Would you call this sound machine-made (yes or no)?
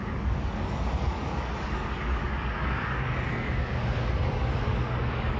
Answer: yes